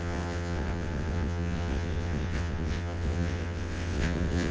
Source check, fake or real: fake